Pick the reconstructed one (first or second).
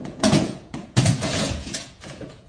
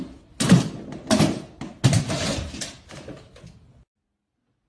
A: first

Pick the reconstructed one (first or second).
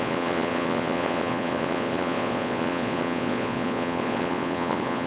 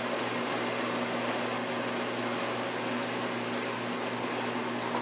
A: first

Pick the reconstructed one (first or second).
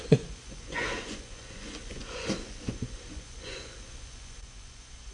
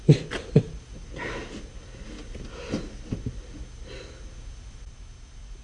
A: first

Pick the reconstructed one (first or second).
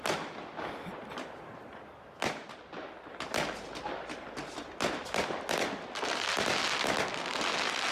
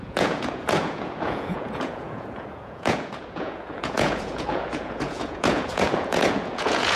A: second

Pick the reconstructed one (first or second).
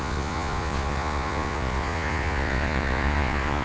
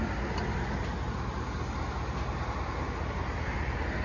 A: first